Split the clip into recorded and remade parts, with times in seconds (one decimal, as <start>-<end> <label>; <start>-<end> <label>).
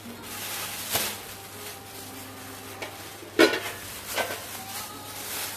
0.0-5.6 recorded